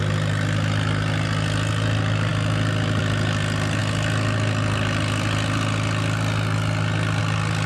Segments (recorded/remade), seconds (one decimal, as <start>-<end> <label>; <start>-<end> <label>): 0.0-7.7 recorded